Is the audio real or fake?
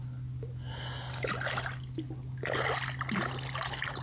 real